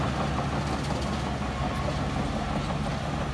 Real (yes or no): yes